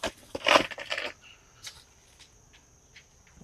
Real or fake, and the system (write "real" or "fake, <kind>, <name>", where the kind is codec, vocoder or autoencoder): real